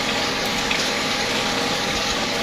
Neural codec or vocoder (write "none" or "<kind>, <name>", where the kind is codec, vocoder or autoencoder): codec, DAC